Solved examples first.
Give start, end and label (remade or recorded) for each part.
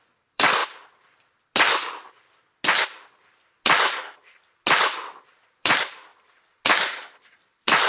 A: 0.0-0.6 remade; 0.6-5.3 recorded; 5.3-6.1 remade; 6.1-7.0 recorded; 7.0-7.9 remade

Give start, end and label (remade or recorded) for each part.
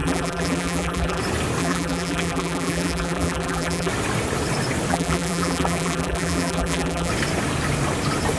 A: 0.0-1.2 remade; 1.2-1.6 recorded; 1.6-3.9 remade; 3.9-4.9 recorded; 4.9-7.1 remade; 7.1-8.4 recorded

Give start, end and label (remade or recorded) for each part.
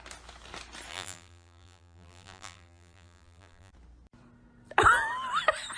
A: 0.0-0.9 recorded; 0.9-3.7 remade; 3.7-5.8 recorded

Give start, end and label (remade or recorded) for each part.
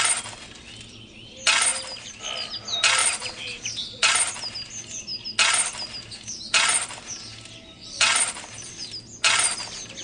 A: 0.0-1.7 recorded; 1.7-2.2 remade; 2.2-3.0 recorded; 3.0-4.1 remade; 4.1-10.0 recorded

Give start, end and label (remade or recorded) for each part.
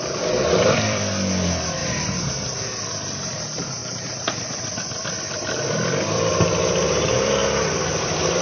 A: 0.0-1.8 remade; 1.8-2.4 recorded; 2.4-3.8 remade; 3.8-5.2 recorded; 5.2-7.4 remade; 7.4-8.4 recorded